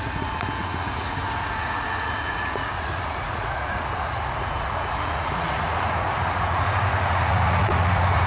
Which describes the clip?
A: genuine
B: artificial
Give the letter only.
B